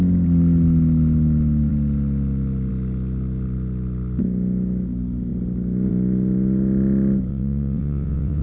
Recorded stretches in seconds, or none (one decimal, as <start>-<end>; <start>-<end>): 0.0-7.3

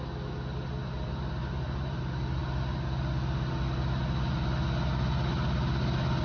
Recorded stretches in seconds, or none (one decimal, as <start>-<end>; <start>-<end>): 0.0-0.8; 2.0-6.2